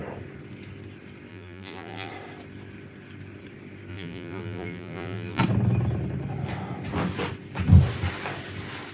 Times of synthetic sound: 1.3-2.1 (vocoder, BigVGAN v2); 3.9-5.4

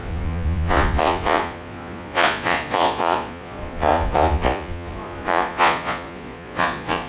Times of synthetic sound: 0.0-7.1 (vocoder, Vocos)

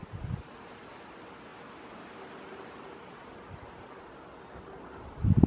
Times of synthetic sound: 0.0-0.8 (vocoder, BigVGAN v2)

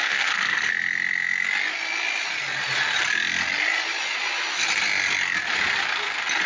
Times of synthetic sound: 0.0-0.7 (codec, SNAC)